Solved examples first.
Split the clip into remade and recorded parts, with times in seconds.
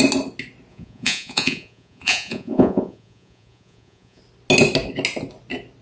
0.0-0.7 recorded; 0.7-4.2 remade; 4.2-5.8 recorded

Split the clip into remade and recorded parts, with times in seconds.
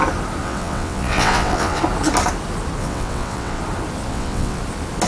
0.0-0.4 recorded; 0.4-1.8 remade; 1.8-2.8 recorded; 2.8-3.6 remade; 3.6-4.1 recorded; 4.1-4.6 remade; 4.6-5.1 recorded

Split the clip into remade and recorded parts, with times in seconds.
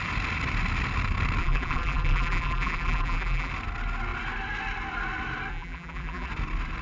0.0-1.4 recorded; 1.4-3.5 remade; 3.5-5.5 recorded; 5.5-6.3 remade; 6.3-6.8 recorded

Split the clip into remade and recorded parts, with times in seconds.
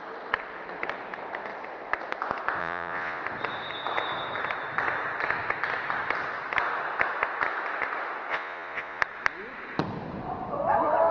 0.0-2.6 recorded; 2.6-3.2 remade; 3.2-8.3 recorded; 8.3-9.0 remade; 9.0-11.1 recorded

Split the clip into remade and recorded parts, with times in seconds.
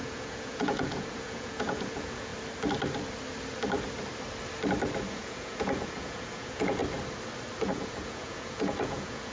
0.0-2.3 remade; 2.3-5.1 recorded; 5.1-6.8 remade; 6.8-7.7 recorded; 7.7-9.3 remade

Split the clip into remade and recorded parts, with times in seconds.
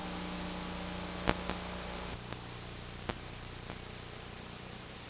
0.0-3.1 recorded; 3.1-5.1 remade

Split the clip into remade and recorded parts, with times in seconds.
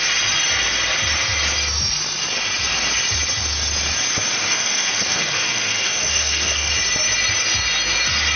0.0-4.5 recorded; 4.5-6.7 remade; 6.7-8.4 recorded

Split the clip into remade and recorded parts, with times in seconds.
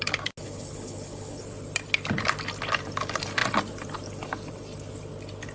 0.0-0.4 recorded; 0.4-1.4 remade; 1.4-5.5 recorded